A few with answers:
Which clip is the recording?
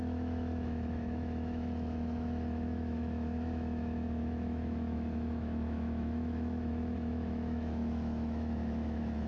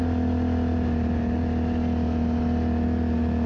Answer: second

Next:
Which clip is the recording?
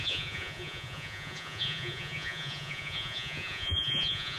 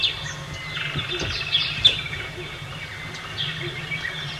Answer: second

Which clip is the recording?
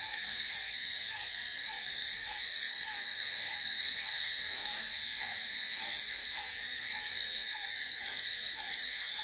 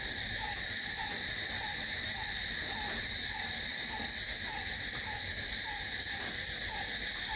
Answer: second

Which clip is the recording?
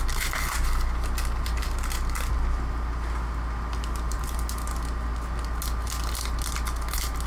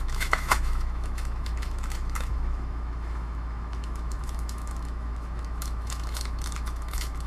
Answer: first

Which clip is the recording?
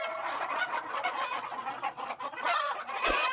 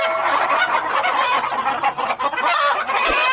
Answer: second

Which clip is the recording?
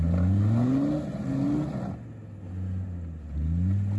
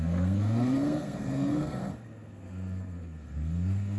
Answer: first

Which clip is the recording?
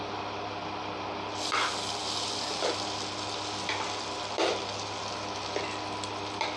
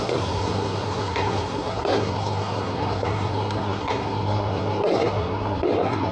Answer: first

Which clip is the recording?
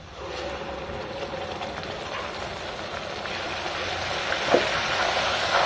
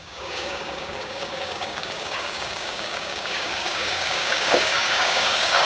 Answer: first